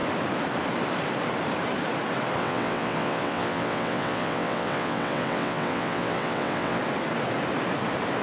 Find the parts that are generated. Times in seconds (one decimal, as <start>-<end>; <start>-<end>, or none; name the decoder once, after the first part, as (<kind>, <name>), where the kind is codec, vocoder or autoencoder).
2.4-6.8 (vocoder, WaveNeXt)